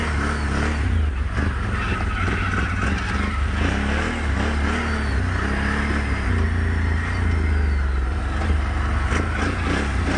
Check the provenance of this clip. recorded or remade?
recorded